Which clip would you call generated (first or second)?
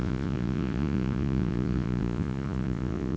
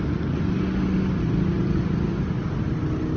first